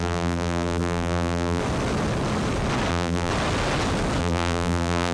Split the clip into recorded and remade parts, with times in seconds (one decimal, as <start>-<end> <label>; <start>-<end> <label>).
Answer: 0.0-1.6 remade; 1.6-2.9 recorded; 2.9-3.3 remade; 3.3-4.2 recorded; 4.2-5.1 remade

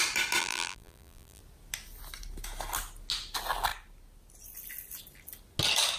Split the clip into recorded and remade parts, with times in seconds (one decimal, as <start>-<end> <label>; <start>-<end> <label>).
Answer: 0.0-0.4 recorded; 0.4-1.4 remade; 1.4-6.0 recorded

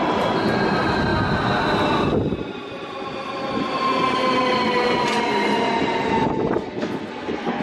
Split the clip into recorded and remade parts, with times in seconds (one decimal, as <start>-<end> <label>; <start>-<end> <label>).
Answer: 0.0-6.6 recorded; 6.6-7.6 remade